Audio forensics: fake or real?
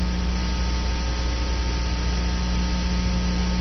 real